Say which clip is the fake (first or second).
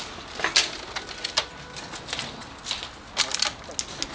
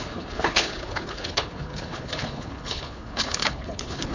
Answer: second